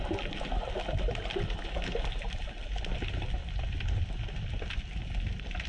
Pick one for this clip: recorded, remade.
recorded